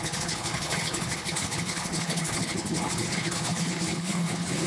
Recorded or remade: remade